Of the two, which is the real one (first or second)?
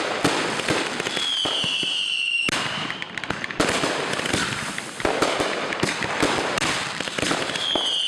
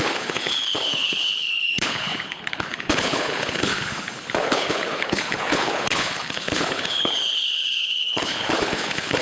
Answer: first